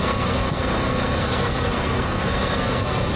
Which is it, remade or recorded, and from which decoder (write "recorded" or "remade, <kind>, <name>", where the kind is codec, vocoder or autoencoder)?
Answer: remade, codec, SNAC